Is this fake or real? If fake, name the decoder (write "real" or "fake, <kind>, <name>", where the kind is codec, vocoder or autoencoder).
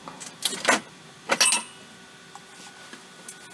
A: real